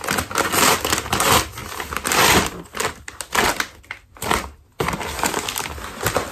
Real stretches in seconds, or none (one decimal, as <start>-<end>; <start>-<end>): 0.0-6.3